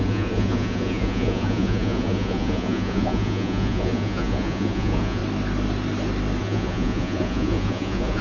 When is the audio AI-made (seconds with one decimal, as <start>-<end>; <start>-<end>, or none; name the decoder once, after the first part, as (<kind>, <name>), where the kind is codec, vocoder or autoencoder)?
0.0-5.2 (vocoder, Vocos); 6.4-8.2